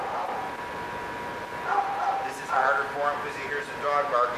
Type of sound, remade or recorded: recorded